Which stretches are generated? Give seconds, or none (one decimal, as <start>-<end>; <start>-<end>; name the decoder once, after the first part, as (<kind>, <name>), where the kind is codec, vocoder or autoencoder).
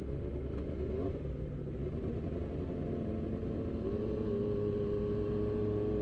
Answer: none